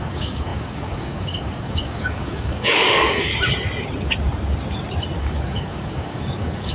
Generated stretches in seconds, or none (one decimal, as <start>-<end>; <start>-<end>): 0.0-3.3; 5.2-6.7

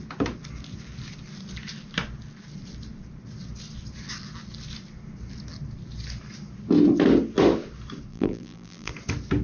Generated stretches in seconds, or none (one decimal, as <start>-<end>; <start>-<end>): 8.1-8.9

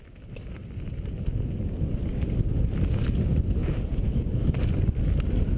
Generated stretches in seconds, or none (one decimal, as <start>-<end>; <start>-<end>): 3.6-4.3

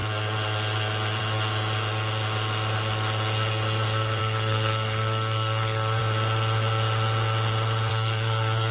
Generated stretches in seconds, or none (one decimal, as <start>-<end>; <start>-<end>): 4.2-6.0; 7.9-8.7

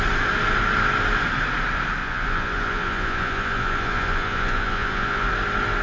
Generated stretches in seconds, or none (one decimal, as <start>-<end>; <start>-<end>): 2.0-5.3

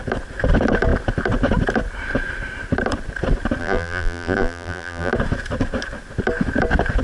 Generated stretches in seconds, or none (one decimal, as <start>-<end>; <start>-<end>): 3.6-5.1

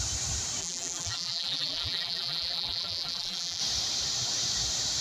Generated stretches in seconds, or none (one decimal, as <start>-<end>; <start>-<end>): 0.6-3.6